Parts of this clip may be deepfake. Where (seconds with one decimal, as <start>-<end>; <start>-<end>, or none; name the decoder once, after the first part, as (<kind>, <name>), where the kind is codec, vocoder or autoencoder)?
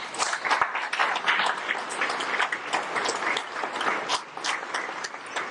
none